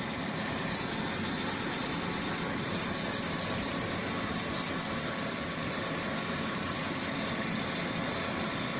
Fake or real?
real